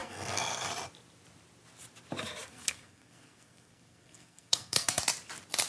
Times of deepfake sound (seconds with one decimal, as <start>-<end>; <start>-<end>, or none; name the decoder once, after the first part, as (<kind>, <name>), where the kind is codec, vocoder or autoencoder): 0.0-0.7 (codec, SNAC); 2.5-5.0